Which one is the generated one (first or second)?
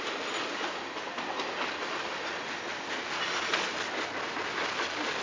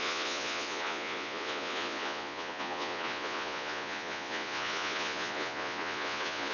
second